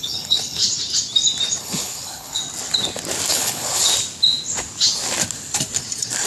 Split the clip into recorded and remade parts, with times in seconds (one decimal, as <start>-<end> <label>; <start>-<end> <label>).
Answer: 0.0-0.6 remade; 0.6-1.6 recorded; 1.6-2.4 remade; 2.4-3.3 recorded; 3.3-3.9 remade; 3.9-6.3 recorded